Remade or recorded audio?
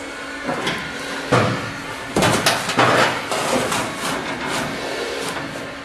recorded